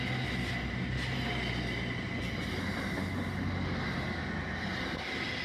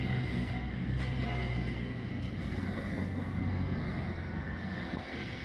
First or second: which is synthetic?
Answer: second